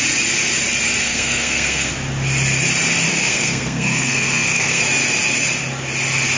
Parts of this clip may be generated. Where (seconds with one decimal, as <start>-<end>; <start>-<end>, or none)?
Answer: 1.0-1.9; 3.1-4.8